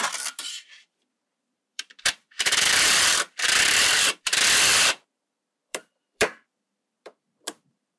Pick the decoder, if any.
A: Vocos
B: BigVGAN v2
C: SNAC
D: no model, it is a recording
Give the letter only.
B